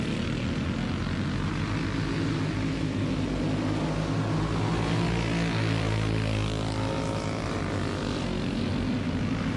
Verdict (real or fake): real